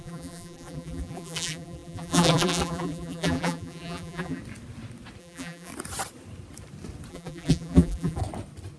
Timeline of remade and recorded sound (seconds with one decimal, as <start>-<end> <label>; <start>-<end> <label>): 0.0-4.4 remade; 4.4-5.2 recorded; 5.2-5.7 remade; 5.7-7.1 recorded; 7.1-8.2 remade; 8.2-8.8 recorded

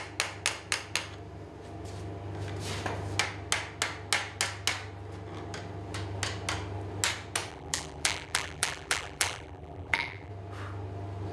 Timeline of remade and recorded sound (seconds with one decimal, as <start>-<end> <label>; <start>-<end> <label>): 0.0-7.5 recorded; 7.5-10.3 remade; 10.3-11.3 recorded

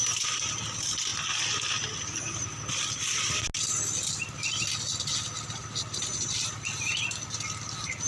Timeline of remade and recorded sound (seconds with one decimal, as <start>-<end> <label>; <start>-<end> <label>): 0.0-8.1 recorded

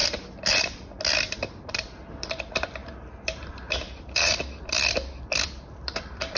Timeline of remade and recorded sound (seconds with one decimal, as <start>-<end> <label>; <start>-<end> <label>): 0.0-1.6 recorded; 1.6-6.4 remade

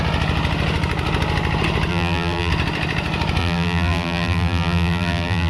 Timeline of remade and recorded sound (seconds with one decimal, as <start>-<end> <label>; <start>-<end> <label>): 0.0-1.9 recorded; 1.9-2.5 remade; 2.5-3.4 recorded; 3.4-5.5 remade

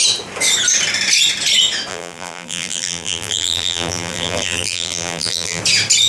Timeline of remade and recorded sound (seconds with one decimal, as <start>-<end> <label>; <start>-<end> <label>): 0.0-1.9 recorded; 1.9-5.6 remade; 5.6-6.1 recorded

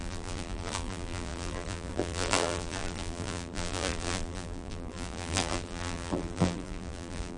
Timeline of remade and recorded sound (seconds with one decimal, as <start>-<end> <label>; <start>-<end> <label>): 0.0-7.4 remade